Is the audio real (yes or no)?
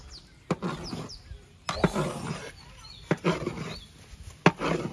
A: yes